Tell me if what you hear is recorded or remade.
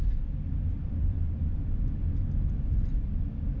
recorded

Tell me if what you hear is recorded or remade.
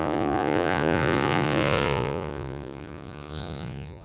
remade